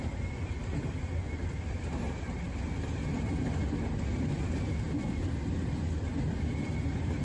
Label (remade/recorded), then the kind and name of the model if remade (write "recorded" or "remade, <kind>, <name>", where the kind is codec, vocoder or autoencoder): recorded